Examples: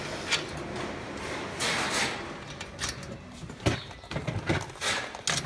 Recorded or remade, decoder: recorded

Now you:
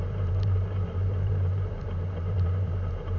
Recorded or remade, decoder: remade, vocoder, BigVGAN v2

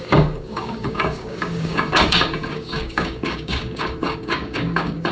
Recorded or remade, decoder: remade, codec, DAC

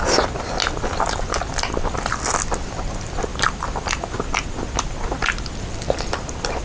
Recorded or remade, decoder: recorded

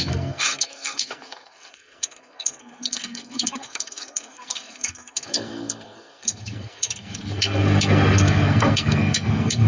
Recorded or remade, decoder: remade, codec, SNAC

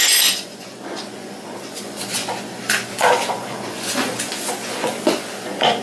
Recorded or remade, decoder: remade, vocoder, Vocos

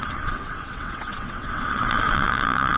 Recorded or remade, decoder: remade, vocoder, WaveNeXt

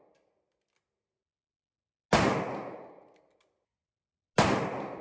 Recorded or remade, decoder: recorded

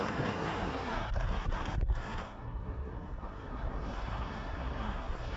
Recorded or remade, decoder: remade, codec, SNAC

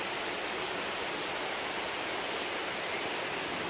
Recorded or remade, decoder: recorded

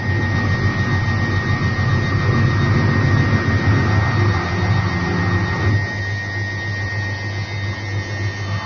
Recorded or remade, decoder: recorded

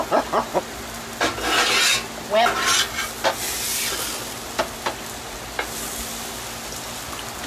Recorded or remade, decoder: recorded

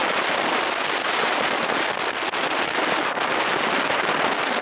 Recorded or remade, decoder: recorded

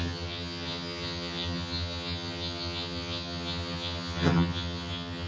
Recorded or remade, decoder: remade, vocoder, HiFi-GAN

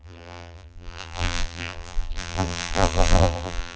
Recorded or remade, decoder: remade, vocoder, BigVGAN v2